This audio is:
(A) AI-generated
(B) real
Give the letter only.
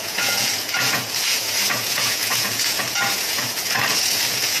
A